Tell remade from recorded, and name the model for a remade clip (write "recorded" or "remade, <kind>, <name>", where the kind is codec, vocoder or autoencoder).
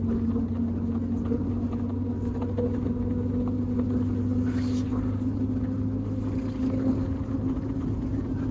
recorded